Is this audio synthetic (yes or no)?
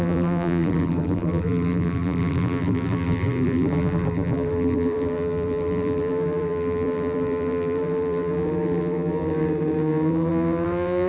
yes